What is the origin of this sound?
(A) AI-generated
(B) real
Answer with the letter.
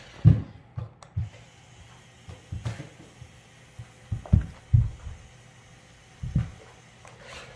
B